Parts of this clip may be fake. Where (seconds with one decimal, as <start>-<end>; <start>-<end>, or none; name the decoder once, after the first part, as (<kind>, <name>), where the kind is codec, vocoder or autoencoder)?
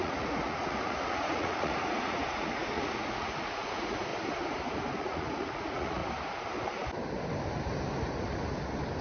0.0-4.1 (vocoder, Vocos); 5.0-6.0